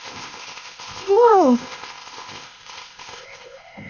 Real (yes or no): no